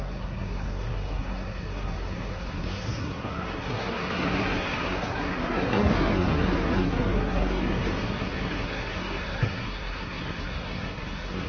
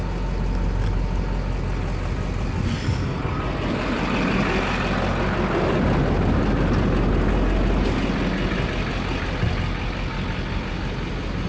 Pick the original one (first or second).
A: second